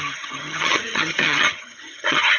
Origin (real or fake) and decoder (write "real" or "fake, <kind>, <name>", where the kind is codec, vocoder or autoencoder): fake, vocoder, HiFi-GAN